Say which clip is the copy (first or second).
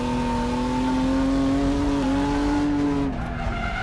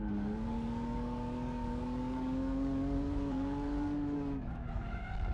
second